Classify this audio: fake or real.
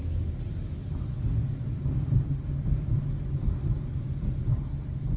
real